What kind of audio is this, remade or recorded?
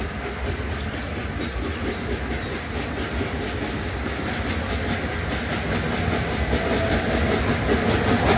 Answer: recorded